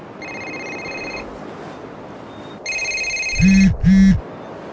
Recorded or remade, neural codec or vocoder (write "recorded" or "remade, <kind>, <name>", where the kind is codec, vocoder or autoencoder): recorded